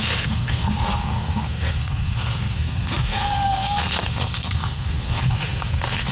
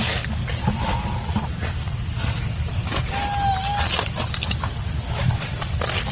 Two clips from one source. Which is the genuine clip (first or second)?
second